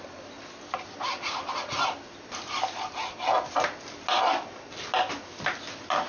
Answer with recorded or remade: recorded